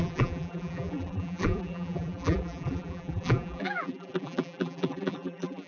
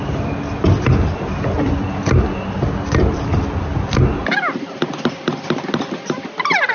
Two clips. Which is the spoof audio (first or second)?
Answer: first